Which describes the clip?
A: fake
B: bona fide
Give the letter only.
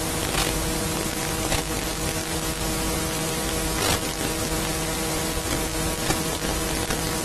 B